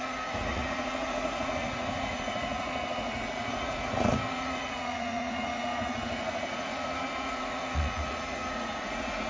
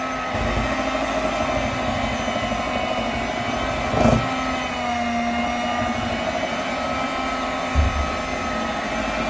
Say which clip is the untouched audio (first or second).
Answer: second